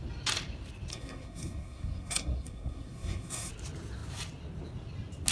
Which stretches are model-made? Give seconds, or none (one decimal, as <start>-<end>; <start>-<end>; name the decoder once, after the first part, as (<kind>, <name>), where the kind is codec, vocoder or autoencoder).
0.9-3.5 (codec, SNAC)